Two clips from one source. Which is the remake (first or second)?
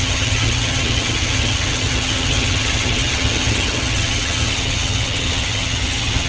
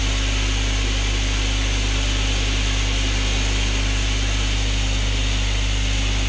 first